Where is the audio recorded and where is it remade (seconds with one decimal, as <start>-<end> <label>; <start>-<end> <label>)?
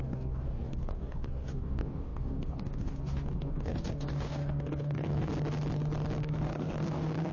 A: 0.0-5.3 remade; 5.3-6.2 recorded; 6.2-7.3 remade